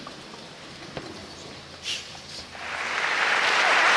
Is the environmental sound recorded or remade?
recorded